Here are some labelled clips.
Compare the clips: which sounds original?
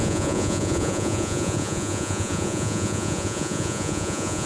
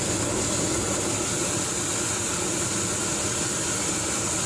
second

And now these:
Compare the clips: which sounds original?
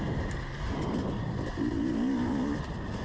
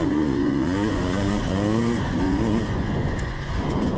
first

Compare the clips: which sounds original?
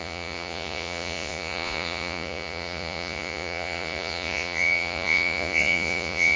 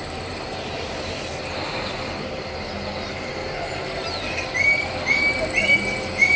second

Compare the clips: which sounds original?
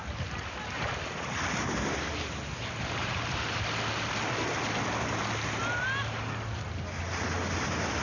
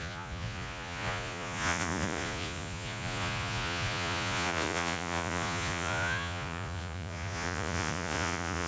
first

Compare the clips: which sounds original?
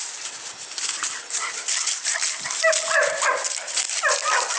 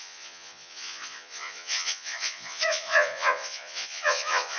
first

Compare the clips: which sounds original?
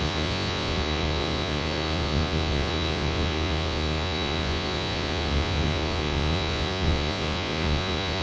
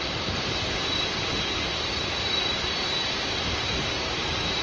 second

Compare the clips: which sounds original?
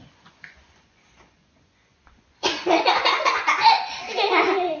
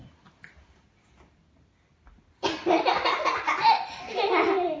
second